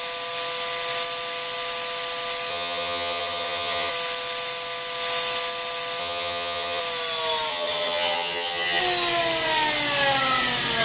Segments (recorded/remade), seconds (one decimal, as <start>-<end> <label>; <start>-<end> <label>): 0.0-2.5 recorded; 2.5-3.9 remade; 3.9-6.0 recorded; 6.0-6.8 remade; 6.8-7.5 recorded; 7.5-8.8 remade; 8.8-10.8 recorded

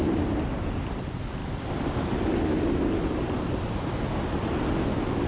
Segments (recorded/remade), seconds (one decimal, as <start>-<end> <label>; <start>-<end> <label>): 0.0-5.3 recorded

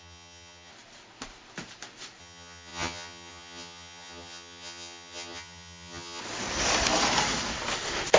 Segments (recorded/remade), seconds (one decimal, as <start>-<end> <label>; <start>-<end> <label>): 0.0-0.7 remade; 0.7-2.2 recorded; 2.2-6.2 remade; 6.2-8.2 recorded

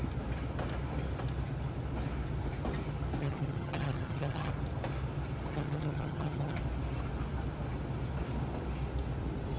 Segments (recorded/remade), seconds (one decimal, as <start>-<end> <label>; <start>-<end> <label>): 0.0-3.2 recorded; 3.2-4.5 remade; 4.5-5.5 recorded; 5.5-6.6 remade; 6.6-9.6 recorded

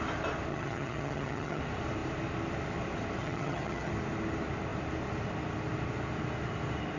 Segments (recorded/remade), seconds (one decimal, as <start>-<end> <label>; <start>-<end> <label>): 0.0-0.5 recorded; 0.5-1.6 remade; 1.6-3.2 recorded; 3.2-3.9 remade; 3.9-7.0 recorded